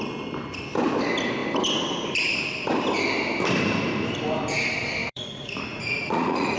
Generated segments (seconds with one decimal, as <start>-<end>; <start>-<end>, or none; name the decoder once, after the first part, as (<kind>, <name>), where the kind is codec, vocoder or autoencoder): 5.0-6.6 (vocoder, Vocos)